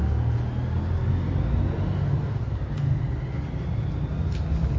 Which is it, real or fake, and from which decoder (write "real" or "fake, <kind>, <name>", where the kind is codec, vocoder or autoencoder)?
real